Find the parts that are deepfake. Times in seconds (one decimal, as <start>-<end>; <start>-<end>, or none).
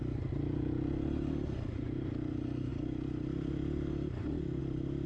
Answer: none